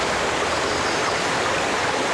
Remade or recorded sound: recorded